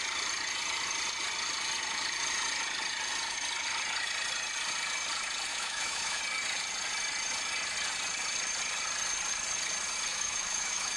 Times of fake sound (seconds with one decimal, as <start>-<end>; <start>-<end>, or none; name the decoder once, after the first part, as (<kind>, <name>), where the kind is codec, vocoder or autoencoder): 5.5-6.2 (autoencoder, DAC-VAE); 10.1-11.0